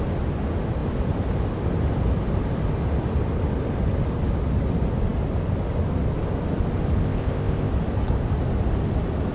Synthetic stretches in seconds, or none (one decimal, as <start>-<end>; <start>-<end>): 7.0-7.7